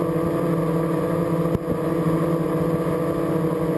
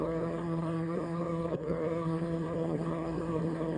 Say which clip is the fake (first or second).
second